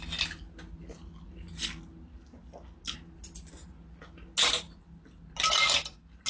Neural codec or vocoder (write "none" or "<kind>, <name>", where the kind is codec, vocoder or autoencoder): none